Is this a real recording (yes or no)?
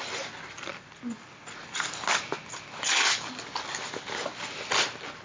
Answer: yes